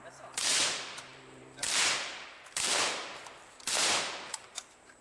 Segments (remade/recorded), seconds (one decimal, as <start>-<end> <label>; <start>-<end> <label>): 0.0-5.0 remade